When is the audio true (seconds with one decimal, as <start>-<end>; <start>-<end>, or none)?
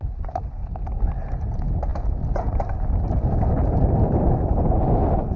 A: 0.0-5.4